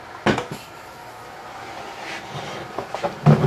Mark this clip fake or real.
real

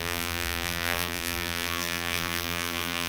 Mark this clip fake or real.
fake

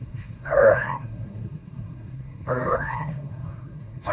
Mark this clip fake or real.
fake